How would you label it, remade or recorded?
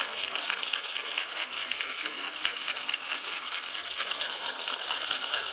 remade